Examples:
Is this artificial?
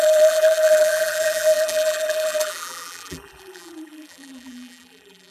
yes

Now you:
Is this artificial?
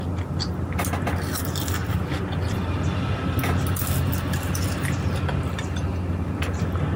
no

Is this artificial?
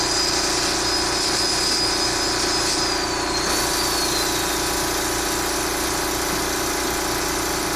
no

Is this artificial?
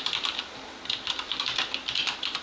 no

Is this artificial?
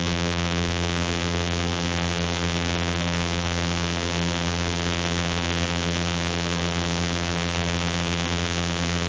yes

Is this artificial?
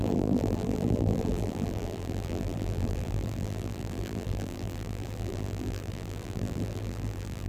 yes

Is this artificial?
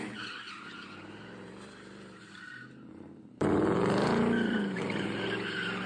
yes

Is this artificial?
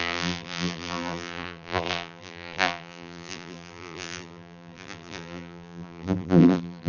yes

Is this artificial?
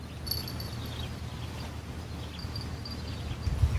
no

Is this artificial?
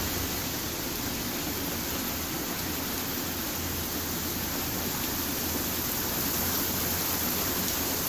yes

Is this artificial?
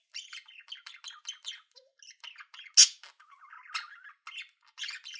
no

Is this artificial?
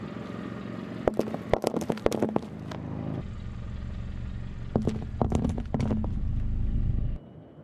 no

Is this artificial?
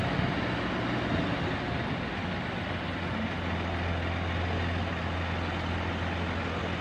no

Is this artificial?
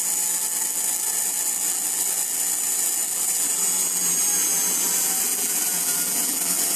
yes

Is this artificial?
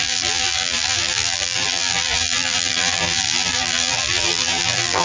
yes